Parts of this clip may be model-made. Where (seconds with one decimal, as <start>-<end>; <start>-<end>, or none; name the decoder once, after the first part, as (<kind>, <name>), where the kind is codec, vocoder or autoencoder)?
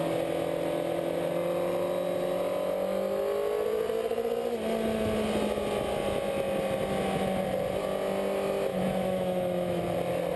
8.7-9.8 (autoencoder, DAC-VAE)